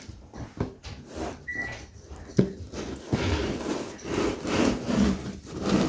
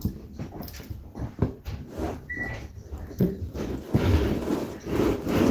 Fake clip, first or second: second